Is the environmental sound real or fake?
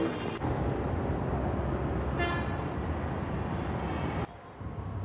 real